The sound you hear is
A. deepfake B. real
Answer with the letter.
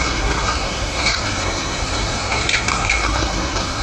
A